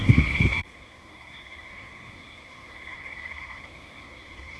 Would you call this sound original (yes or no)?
no